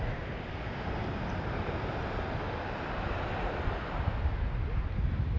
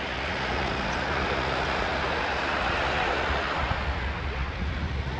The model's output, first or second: second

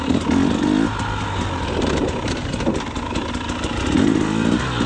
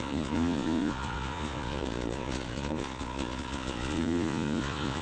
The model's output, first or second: second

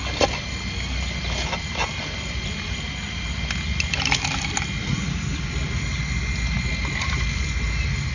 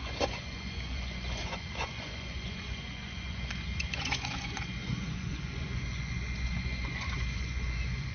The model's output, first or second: second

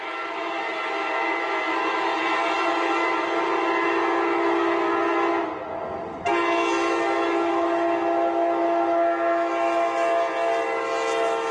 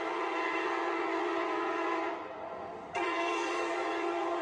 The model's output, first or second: second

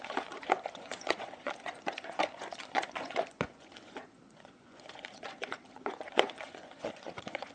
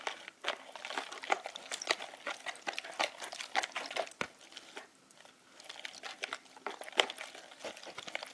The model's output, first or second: first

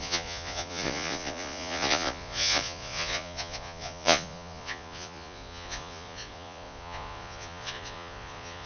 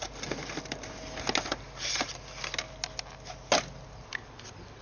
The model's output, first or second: first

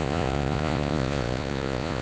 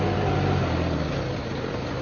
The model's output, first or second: first